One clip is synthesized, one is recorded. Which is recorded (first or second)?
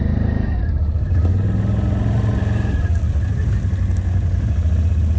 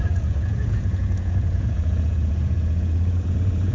first